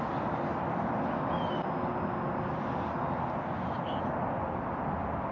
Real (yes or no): yes